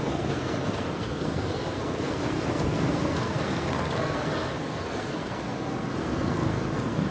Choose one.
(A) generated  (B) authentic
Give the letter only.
A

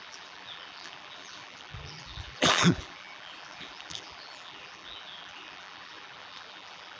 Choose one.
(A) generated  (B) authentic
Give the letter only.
A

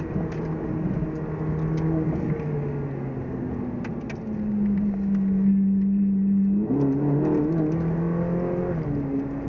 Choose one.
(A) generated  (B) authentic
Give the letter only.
B